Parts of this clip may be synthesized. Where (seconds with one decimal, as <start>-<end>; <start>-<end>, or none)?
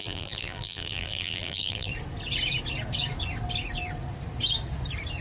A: 0.0-1.9